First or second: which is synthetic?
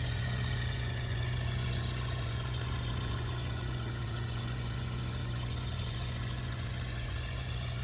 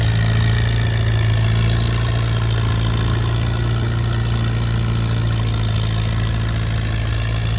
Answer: first